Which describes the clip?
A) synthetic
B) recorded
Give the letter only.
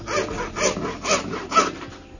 B